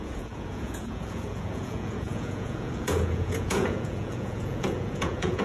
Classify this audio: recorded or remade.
remade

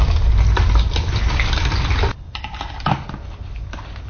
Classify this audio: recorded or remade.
recorded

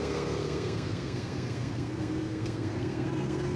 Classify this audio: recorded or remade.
remade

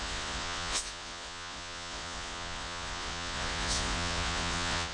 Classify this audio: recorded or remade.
remade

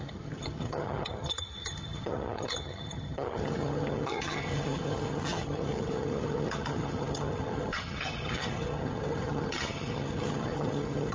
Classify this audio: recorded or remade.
remade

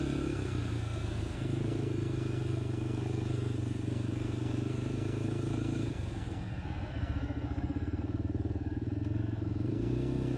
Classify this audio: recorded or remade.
remade